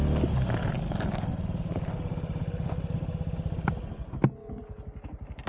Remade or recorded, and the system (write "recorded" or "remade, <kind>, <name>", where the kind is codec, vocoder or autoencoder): recorded